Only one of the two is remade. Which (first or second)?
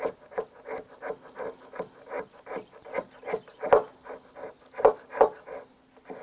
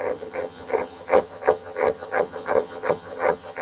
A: second